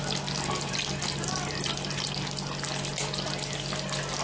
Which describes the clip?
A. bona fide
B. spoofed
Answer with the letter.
A